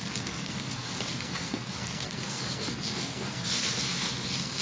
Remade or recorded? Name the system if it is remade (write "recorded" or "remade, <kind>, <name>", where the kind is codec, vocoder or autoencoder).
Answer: remade, codec, SNAC